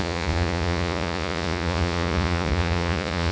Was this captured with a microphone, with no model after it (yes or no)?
no